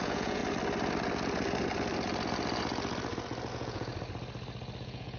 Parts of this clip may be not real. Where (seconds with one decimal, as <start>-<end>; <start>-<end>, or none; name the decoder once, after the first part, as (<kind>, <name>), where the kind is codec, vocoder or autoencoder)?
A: 0.0-0.4 (vocoder, Vocos); 3.5-3.9; 4.8-5.2